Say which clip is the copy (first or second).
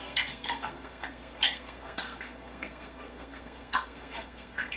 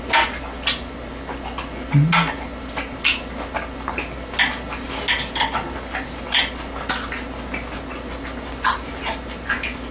first